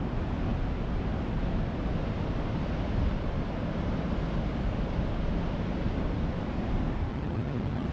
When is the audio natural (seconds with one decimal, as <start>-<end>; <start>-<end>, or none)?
0.0-7.1